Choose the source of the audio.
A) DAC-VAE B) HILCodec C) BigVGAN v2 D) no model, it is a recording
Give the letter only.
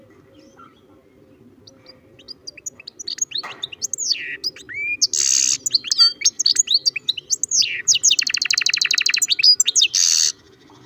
D